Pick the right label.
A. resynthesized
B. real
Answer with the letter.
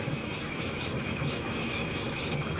A